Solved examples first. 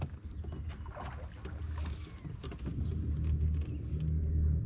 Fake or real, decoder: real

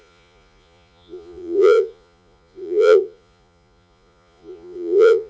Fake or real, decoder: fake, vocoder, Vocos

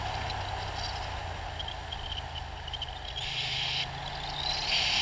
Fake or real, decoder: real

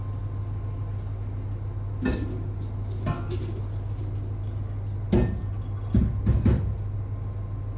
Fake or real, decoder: real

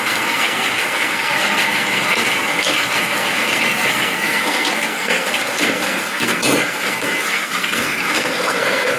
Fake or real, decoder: fake, codec, SNAC